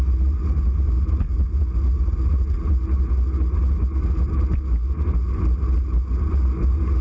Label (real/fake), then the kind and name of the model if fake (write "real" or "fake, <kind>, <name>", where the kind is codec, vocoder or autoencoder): real